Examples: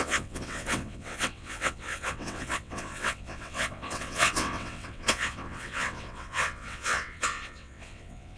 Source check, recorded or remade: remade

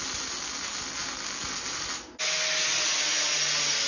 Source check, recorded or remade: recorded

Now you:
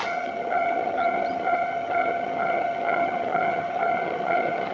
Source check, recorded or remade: remade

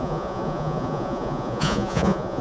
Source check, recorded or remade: remade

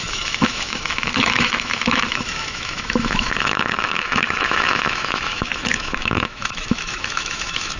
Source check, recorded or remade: remade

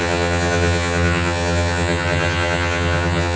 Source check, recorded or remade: remade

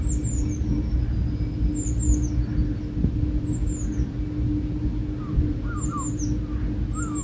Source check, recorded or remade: recorded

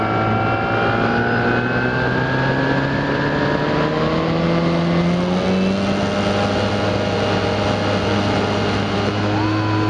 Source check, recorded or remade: recorded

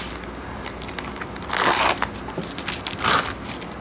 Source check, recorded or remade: recorded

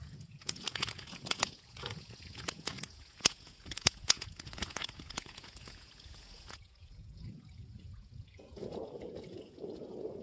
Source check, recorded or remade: remade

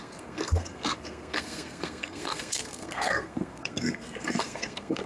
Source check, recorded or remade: remade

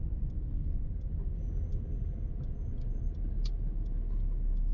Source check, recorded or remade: recorded